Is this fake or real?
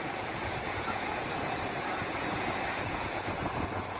fake